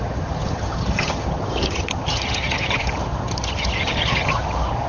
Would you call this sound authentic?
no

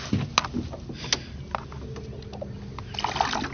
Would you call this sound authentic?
yes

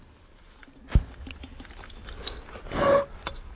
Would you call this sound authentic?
yes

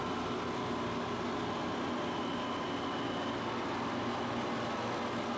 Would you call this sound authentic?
yes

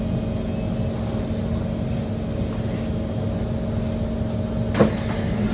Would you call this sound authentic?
yes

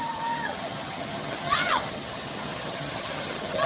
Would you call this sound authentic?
no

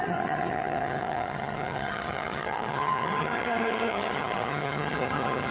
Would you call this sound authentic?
no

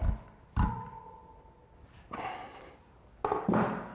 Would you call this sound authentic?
yes